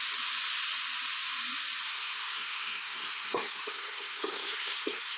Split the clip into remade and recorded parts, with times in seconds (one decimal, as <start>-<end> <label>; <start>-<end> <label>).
0.0-1.9 recorded; 1.9-5.2 remade